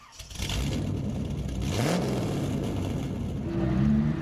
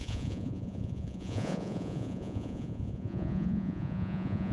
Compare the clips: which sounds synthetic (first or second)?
second